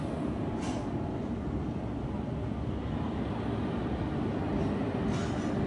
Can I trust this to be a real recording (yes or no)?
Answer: yes